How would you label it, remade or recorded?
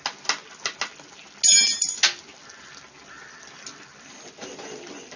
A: recorded